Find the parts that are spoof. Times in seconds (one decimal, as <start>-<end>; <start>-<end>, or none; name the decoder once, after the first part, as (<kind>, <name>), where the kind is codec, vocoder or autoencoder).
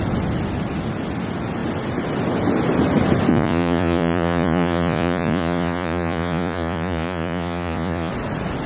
3.3-8.1 (vocoder, Vocos)